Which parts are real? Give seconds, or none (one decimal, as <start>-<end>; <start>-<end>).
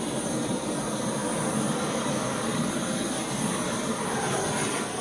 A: 0.0-5.0